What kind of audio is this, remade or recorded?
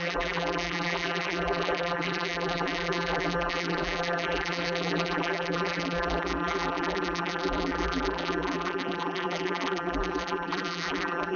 remade